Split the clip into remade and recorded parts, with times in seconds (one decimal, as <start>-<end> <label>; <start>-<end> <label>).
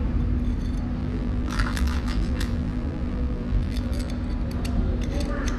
0.0-1.0 recorded; 1.0-4.1 remade; 4.1-5.6 recorded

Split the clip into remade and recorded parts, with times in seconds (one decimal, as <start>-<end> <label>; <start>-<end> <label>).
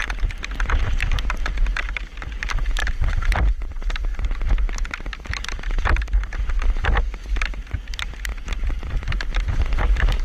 0.0-0.8 remade; 0.8-2.8 recorded; 2.8-5.3 remade; 5.3-8.3 recorded; 8.3-10.2 remade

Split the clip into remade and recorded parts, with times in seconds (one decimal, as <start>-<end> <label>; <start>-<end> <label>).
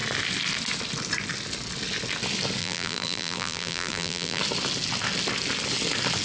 0.0-2.6 recorded; 2.6-4.4 remade; 4.4-6.2 recorded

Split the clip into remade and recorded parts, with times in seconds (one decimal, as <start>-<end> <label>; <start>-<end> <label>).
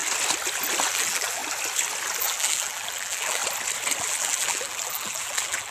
0.0-0.9 recorded; 0.9-1.4 remade; 1.4-2.2 recorded; 2.2-3.4 remade; 3.4-4.0 recorded; 4.0-5.7 remade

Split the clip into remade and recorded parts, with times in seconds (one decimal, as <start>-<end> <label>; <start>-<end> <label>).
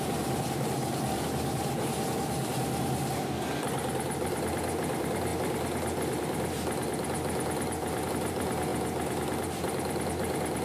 0.0-10.6 remade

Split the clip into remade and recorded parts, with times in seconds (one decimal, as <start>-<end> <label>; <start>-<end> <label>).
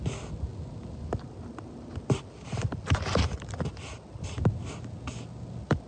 0.0-5.9 recorded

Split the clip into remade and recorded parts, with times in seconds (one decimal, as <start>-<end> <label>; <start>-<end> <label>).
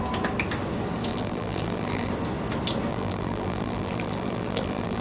0.0-1.1 recorded; 1.1-2.1 remade; 2.1-2.9 recorded; 2.9-5.0 remade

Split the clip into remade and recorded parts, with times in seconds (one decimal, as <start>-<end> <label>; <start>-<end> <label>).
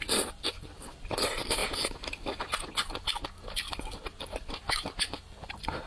0.0-1.6 remade; 1.6-4.2 recorded; 4.2-5.9 remade